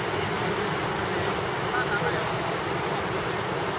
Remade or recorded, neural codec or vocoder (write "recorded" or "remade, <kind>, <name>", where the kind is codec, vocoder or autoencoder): recorded